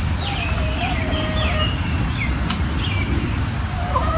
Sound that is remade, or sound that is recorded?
recorded